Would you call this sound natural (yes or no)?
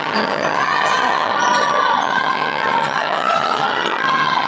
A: no